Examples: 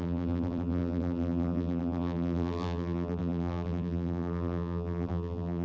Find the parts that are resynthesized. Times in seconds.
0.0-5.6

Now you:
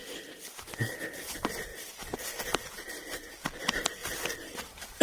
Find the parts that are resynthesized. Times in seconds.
0.7-1.7; 3.6-4.0

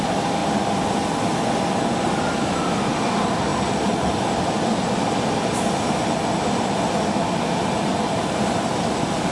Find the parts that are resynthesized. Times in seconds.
0.0-0.4; 3.1-3.5; 7.5-9.3

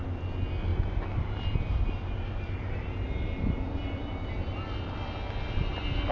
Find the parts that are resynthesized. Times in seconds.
0.7-4.3

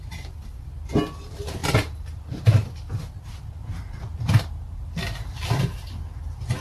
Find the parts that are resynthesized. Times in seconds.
1.6-5.6

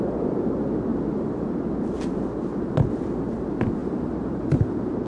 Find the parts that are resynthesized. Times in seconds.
3.8-4.6

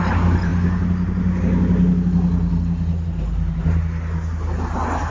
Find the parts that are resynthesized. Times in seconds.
none